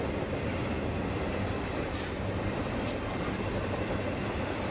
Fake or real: real